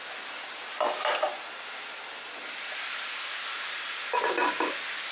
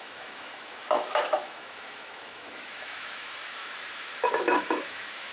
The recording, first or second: first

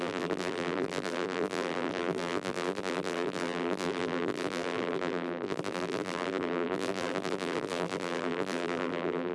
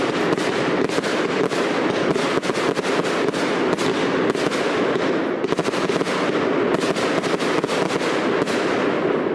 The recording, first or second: second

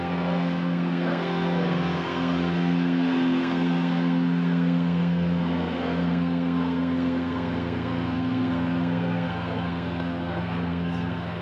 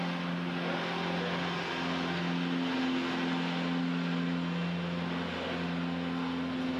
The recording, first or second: second